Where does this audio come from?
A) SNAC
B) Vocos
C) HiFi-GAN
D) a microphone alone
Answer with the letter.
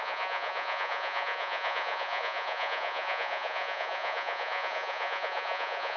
B